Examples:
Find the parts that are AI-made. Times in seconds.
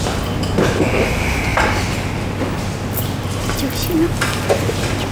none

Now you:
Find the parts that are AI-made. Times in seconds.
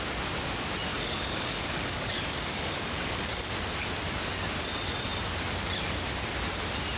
0.9-3.5 (codec, DAC)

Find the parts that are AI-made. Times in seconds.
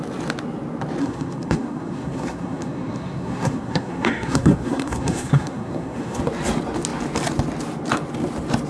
1.0-6.2 (codec, SNAC)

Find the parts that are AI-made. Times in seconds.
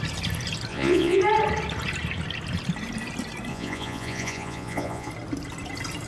0.7-1.2 (vocoder, Vocos); 3.5-5.1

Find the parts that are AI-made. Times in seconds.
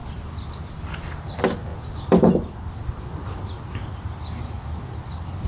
none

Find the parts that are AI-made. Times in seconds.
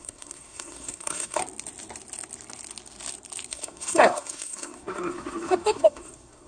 0.0-1.4 (codec, SNAC); 3.5-6.5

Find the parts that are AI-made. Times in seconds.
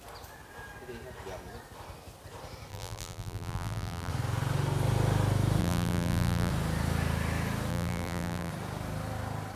2.7-4.1 (vocoder, BigVGAN v2); 5.6-6.5; 7.7-8.5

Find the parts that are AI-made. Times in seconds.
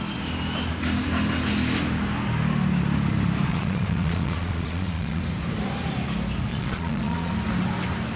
3.5-5.2 (vocoder, Vocos); 6.5-7.3